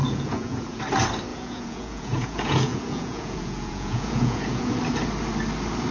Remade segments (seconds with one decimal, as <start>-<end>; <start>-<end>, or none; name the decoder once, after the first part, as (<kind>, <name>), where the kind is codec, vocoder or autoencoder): 0.0-0.8 (vocoder, Vocos); 1.3-4.8